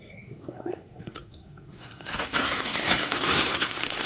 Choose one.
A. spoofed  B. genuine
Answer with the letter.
A